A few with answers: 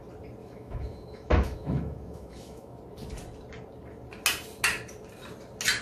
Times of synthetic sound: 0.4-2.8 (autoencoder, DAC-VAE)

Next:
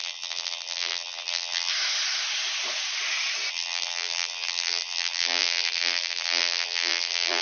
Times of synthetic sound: 0.0-1.7 (vocoder, BigVGAN v2); 3.5-7.4

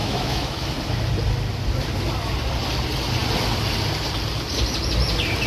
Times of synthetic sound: 0.0-0.7 (autoencoder, DAC-VAE)